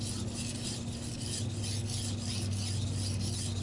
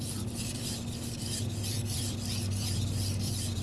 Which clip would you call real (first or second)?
first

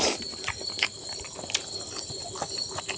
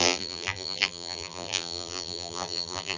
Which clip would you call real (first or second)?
first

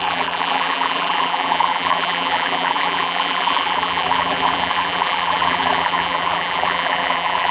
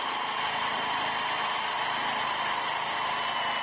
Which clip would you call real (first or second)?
second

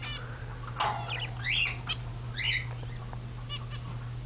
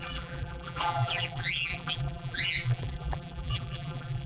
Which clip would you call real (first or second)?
first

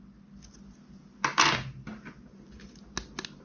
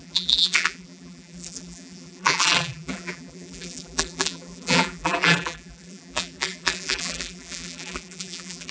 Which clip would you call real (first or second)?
first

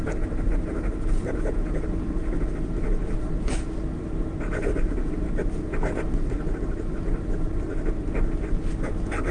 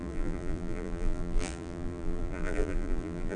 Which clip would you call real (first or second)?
first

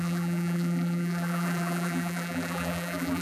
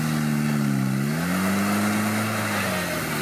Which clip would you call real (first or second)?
second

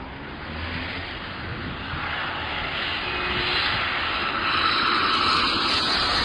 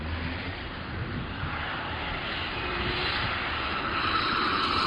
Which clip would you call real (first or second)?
first